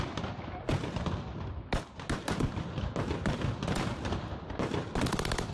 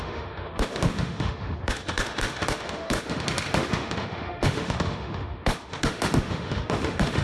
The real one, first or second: first